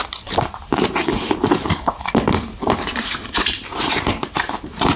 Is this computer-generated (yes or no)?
yes